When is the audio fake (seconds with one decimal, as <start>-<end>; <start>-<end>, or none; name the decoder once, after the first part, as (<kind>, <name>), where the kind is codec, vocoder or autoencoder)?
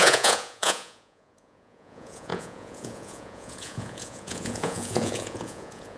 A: 0.0-6.0 (vocoder, Vocos)